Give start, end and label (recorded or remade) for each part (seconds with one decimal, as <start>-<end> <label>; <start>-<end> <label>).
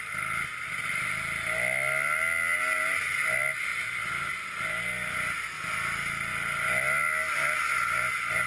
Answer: 0.0-8.5 recorded